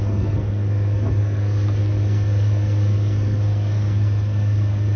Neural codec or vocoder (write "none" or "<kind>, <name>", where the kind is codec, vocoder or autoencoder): codec, SNAC